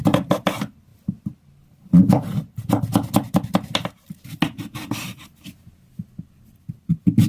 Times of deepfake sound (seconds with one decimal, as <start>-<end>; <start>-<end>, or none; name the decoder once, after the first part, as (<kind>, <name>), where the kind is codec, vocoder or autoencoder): none